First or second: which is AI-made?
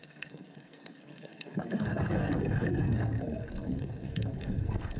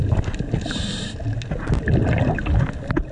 first